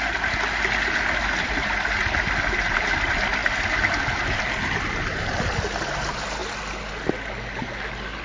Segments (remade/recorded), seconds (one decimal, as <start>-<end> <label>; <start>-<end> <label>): 0.0-8.2 recorded